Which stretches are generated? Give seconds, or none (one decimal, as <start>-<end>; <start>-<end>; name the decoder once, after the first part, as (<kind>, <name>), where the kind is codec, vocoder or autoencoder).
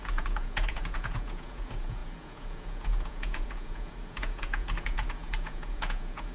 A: 0.0-6.3 (vocoder, Vocos)